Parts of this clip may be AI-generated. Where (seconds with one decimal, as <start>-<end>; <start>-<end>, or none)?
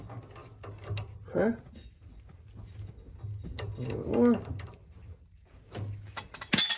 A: none